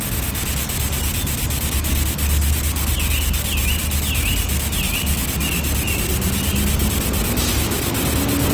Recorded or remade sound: recorded